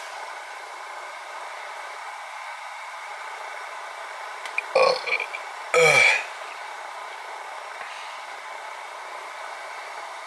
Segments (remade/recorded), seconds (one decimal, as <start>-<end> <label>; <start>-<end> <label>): 0.0-10.3 recorded